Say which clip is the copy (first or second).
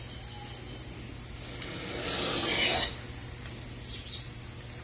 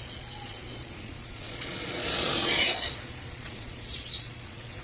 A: second